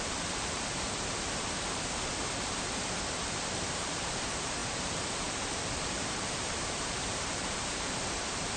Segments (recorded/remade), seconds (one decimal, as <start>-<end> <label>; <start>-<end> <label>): 0.0-2.2 remade; 2.2-3.7 recorded; 3.7-8.6 remade